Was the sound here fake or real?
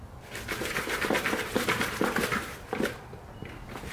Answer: real